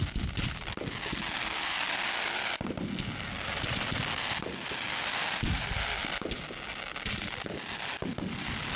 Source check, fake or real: real